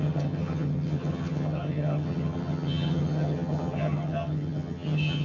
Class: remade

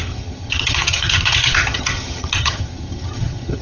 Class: remade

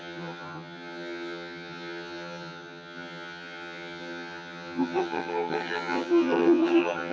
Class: remade